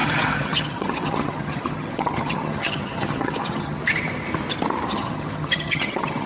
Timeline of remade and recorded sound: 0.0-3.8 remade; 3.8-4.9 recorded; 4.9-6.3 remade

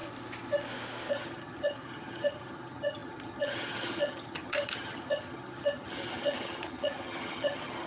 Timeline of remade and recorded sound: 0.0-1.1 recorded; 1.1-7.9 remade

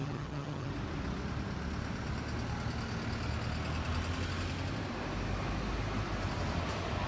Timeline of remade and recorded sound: 0.0-0.7 remade; 0.7-7.1 recorded

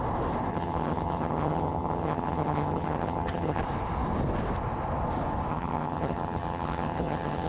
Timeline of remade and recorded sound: 0.0-0.5 recorded; 0.5-3.6 remade; 3.6-5.5 recorded; 5.5-7.5 remade

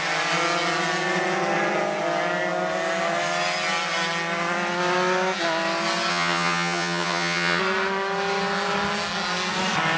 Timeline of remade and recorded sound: 0.0-6.1 recorded; 6.1-7.6 remade; 7.6-10.0 recorded